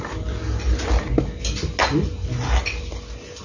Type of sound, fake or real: real